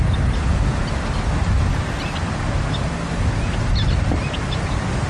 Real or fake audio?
real